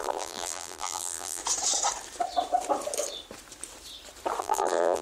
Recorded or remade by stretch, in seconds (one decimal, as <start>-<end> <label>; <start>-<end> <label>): 0.0-1.4 remade; 1.4-4.4 recorded; 4.4-5.0 remade